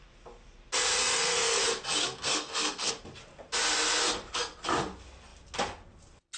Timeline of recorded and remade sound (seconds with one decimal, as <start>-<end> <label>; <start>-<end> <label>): 0.0-1.0 recorded; 1.0-1.6 remade; 1.6-2.0 recorded; 2.0-2.9 remade; 2.9-6.4 recorded